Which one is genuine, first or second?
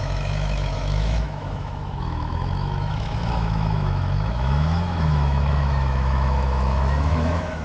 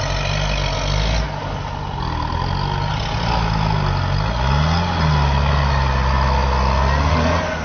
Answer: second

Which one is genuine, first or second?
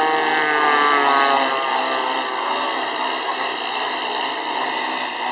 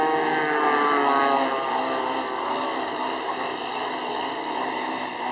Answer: first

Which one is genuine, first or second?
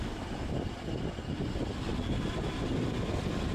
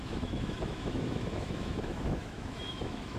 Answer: first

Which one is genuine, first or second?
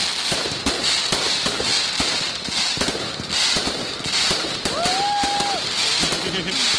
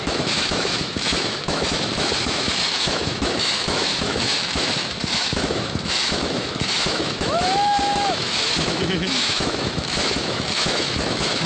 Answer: first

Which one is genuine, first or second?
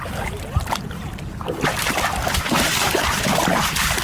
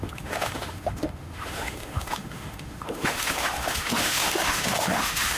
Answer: first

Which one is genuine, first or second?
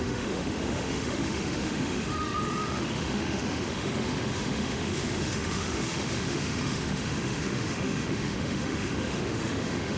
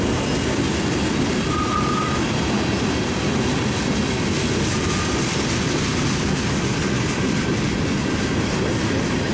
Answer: second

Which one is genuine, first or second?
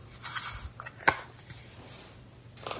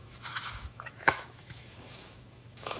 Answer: first